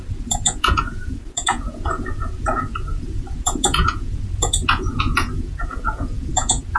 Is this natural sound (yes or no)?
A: no